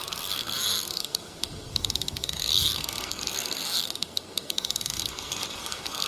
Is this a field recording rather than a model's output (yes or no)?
no